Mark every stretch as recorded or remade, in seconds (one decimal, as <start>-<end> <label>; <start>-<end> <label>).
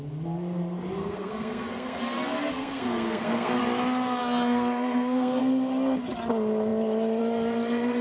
0.0-1.0 recorded; 1.0-2.0 remade; 2.0-2.6 recorded; 2.6-3.6 remade; 3.6-4.2 recorded; 4.2-5.4 remade; 5.4-8.0 recorded